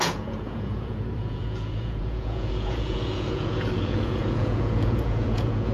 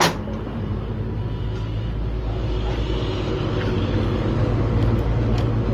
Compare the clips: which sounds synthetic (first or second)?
first